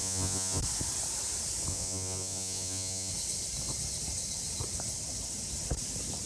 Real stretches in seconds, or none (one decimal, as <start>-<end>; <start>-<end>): 0.6-1.7; 3.1-6.3